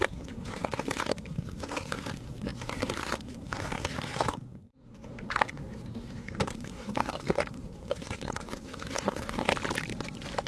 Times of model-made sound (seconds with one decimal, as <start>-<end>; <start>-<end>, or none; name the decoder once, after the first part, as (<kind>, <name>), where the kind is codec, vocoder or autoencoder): 0.0-9.5 (codec, SNAC)